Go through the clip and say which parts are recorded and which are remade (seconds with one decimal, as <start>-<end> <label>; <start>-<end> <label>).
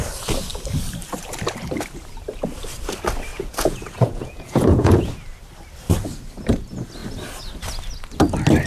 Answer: 0.0-3.3 recorded; 3.3-5.1 remade; 5.1-8.7 recorded